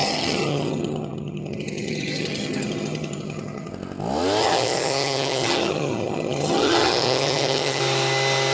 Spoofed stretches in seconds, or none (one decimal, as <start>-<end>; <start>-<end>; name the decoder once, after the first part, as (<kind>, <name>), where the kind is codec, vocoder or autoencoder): 0.0-3.7 (vocoder, HiFi-GAN); 4.4-7.8

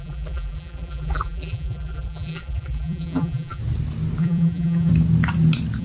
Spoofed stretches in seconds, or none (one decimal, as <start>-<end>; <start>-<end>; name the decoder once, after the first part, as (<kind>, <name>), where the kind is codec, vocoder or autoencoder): 0.0-3.6 (vocoder, BigVGAN v2); 4.2-4.9

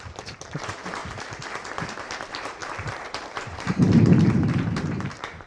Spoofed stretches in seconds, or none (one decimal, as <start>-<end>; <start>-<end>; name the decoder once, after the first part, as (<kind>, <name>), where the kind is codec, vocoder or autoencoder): 0.0-1.0 (vocoder, BigVGAN v2); 2.0-5.5

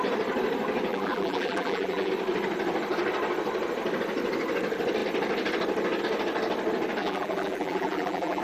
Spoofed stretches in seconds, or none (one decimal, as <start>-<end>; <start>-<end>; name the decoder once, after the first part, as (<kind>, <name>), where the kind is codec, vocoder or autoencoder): 0.9-2.1 (vocoder, BigVGAN v2); 7.0-8.4

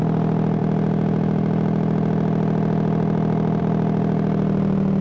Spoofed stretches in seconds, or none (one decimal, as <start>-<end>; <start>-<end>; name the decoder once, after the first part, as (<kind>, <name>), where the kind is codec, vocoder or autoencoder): none